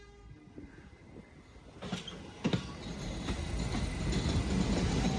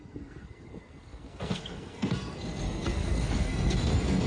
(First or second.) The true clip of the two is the first